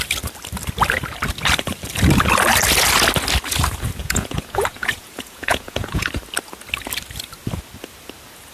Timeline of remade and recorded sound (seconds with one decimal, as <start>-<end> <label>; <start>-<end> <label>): 0.0-4.0 recorded; 4.0-6.1 remade; 6.1-8.5 recorded